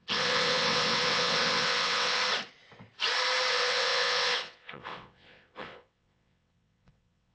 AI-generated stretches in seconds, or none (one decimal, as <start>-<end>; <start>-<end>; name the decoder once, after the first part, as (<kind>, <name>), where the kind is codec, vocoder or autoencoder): 0.0-2.2 (vocoder, WaveNeXt); 3.5-7.3